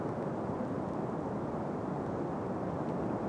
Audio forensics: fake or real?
real